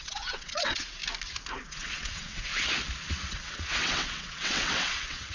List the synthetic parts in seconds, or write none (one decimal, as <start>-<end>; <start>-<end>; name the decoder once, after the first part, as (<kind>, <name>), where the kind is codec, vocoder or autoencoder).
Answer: 0.0-1.0 (vocoder, WaveNeXt); 1.7-2.5; 3.1-5.3